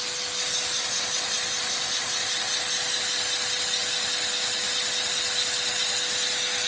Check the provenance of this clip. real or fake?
real